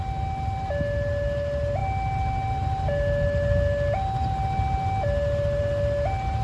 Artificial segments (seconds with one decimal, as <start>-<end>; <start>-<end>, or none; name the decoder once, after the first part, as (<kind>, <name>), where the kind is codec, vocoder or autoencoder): none